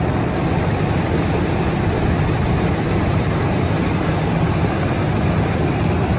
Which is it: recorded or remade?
recorded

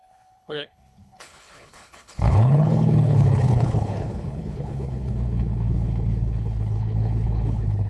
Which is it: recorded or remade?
remade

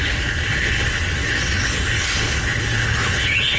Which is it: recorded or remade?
remade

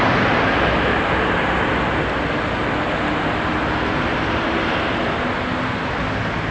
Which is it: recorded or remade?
recorded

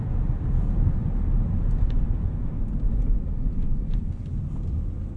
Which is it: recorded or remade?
recorded